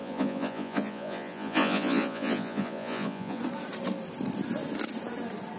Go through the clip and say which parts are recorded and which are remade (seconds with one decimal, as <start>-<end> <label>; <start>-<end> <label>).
0.0-3.4 remade; 3.4-5.6 recorded